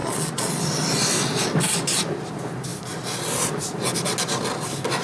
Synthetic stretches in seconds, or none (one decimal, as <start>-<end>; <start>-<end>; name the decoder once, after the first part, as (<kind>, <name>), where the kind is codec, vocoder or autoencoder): 0.0-0.5 (vocoder, Vocos)